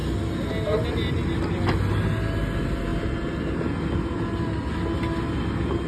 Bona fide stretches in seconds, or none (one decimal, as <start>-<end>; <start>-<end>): 0.0-5.9